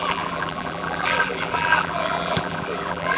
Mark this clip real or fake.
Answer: fake